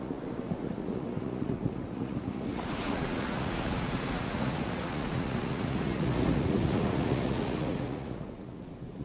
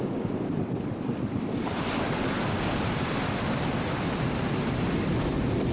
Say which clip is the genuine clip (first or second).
second